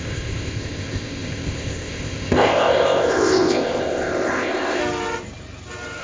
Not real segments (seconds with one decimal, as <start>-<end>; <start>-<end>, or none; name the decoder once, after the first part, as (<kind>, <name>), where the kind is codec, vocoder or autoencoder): 0.0-4.8 (codec, ZipCodec)